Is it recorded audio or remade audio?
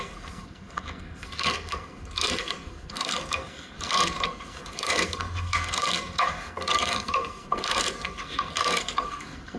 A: remade